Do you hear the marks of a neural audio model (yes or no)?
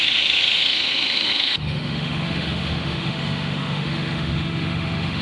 yes